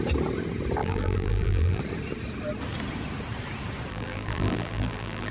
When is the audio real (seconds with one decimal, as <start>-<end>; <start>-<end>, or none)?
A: 0.0-0.8; 1.8-3.9